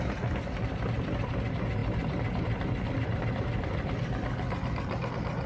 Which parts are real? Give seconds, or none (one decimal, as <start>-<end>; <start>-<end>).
none